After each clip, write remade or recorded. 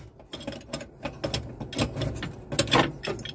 recorded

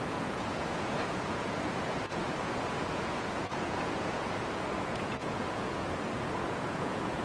remade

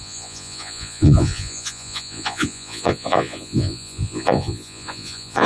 remade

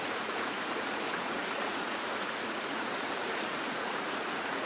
remade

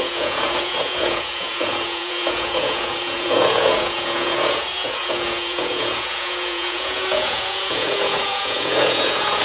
remade